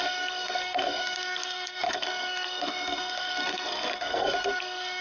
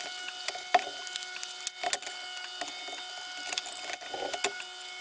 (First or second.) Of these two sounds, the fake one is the first